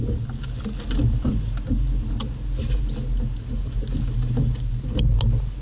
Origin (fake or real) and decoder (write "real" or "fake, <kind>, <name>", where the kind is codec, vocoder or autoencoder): real